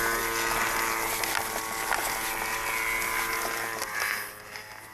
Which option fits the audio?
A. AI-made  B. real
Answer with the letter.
B